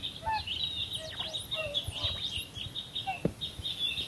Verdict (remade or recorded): recorded